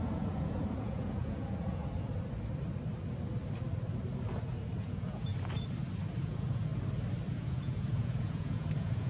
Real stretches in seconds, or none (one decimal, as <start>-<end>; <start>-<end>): 1.8-4.8; 5.3-6.2; 6.7-7.3